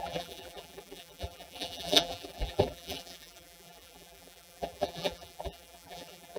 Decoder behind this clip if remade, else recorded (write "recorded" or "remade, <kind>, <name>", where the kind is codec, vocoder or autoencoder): remade, vocoder, BigVGAN v2